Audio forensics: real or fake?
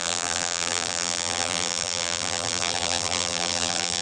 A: fake